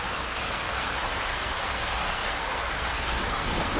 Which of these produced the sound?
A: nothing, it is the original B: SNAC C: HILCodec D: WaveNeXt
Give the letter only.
B